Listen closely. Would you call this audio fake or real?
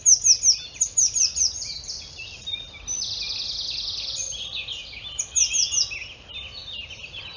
real